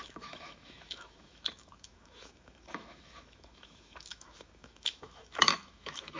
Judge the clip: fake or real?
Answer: fake